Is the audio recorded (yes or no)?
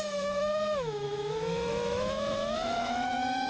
no